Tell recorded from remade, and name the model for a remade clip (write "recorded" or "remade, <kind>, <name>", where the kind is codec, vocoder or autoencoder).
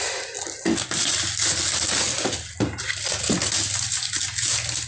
recorded